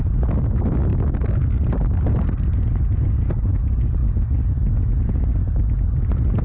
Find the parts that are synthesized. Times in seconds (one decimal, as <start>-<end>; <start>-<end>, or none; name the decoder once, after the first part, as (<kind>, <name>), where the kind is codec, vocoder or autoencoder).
none